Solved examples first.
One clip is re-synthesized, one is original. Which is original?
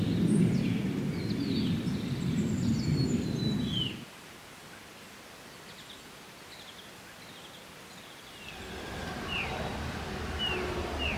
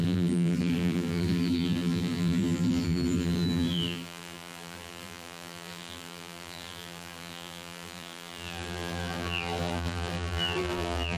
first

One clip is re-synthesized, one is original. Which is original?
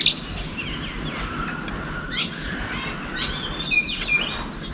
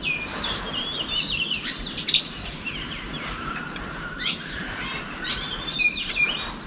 first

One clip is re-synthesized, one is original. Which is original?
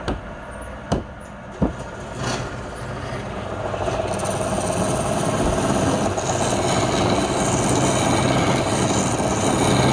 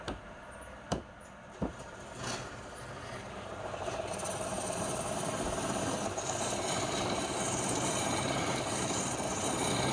first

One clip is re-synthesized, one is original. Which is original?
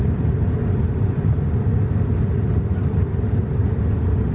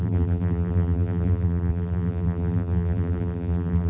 first